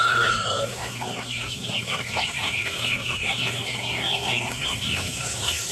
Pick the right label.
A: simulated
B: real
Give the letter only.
A